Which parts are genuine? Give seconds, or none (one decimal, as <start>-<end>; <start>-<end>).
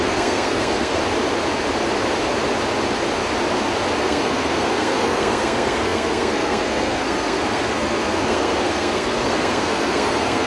1.0-4.0